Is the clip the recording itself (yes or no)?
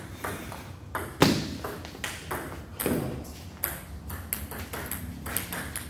yes